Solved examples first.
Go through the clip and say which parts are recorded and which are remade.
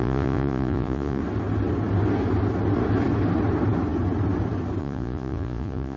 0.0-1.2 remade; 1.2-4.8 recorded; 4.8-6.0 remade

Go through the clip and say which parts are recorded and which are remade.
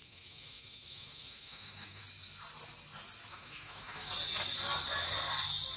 0.0-2.0 remade; 2.0-3.3 recorded; 3.3-4.1 remade; 4.1-5.8 recorded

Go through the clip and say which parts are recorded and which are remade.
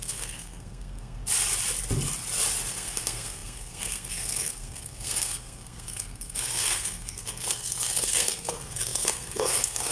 0.0-1.2 remade; 1.2-2.7 recorded; 2.7-9.9 remade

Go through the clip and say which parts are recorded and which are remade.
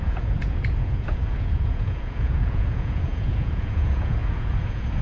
0.0-5.0 remade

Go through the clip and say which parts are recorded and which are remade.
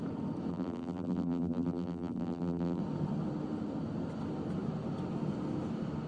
0.0-0.5 recorded; 0.5-2.8 remade; 2.8-6.1 recorded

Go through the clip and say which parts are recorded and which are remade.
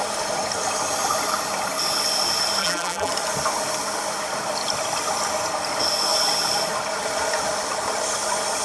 0.0-2.6 recorded; 2.6-3.1 remade; 3.1-8.6 recorded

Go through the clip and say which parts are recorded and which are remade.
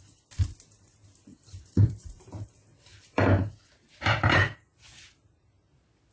0.0-1.3 recorded; 1.3-2.5 remade; 2.5-2.9 recorded; 2.9-5.5 remade; 5.5-6.1 recorded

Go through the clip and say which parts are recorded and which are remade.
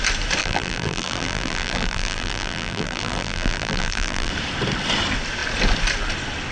0.0-0.4 recorded; 0.4-4.3 remade; 4.3-6.5 recorded